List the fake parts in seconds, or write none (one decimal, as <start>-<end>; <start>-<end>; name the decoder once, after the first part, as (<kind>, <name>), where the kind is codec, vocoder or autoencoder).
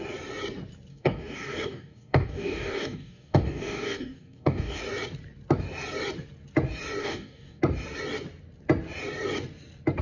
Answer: 0.9-4.8 (codec, DAC); 7.0-7.6